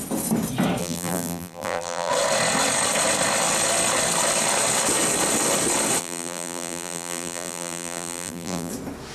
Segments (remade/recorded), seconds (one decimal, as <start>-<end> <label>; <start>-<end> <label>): 0.0-0.8 recorded; 0.8-2.1 remade; 2.1-6.0 recorded; 6.0-8.7 remade; 8.7-9.1 recorded